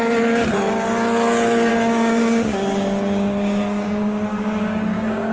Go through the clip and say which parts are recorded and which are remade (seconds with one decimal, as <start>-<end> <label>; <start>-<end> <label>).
0.0-1.7 recorded; 1.7-5.3 remade